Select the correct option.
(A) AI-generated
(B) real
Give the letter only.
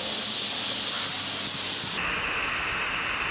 B